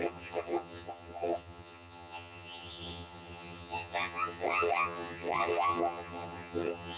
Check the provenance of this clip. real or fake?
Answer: fake